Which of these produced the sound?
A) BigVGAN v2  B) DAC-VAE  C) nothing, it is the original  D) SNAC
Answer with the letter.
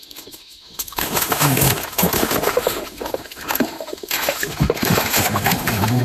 B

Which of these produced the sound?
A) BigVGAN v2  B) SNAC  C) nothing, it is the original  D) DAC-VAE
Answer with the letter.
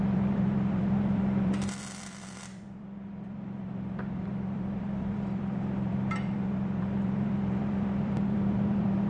A